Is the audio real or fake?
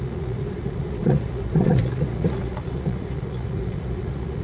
fake